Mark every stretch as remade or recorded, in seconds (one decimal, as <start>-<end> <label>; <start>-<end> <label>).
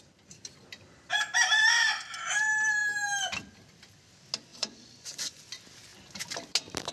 0.0-4.5 recorded; 4.5-5.4 remade; 5.4-6.9 recorded